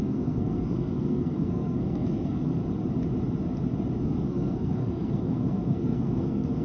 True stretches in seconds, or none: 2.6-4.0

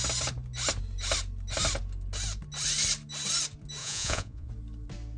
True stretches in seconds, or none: 0.0-3.8; 4.5-5.2

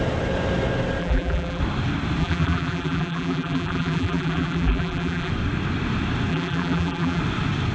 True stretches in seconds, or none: 0.0-1.0; 1.6-2.2; 5.3-6.3; 7.2-7.7

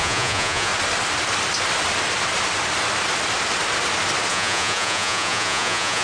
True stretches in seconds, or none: 0.7-4.3